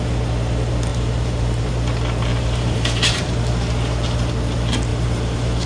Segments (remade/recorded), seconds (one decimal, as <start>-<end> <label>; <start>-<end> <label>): 0.0-0.9 recorded; 0.9-1.7 remade; 1.7-2.3 recorded; 2.3-3.5 remade; 3.5-4.9 recorded; 4.9-5.7 remade